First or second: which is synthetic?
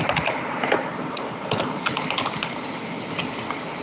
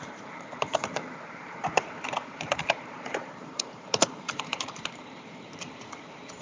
second